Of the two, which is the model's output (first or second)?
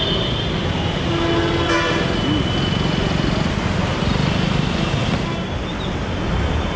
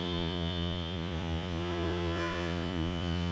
second